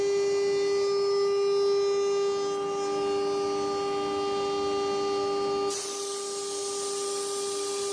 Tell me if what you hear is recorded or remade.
recorded